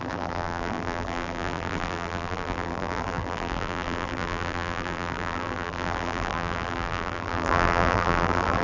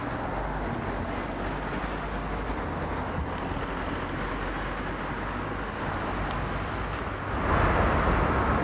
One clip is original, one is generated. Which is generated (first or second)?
first